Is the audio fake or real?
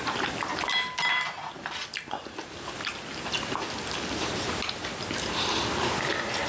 real